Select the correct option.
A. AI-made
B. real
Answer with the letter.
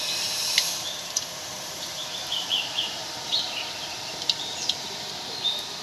A